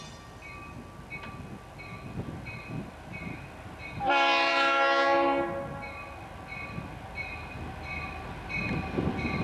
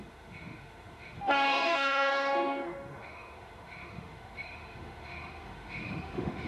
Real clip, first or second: first